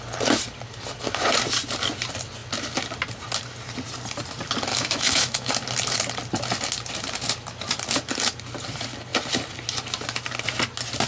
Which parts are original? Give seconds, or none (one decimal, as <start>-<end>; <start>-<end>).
0.0-4.7; 5.5-11.1